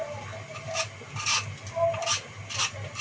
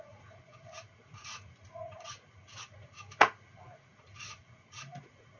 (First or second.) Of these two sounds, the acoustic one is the first